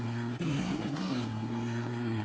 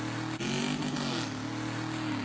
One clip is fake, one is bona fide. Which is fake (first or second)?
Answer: first